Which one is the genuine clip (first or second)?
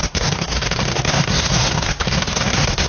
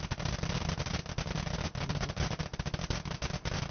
second